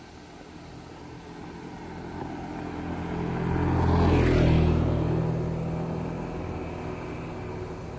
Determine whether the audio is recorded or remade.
recorded